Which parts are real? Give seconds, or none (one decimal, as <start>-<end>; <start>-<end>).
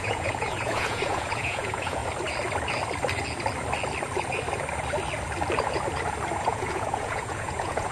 2.0-6.4